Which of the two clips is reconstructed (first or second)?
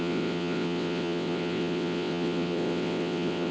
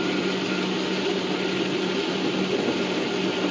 first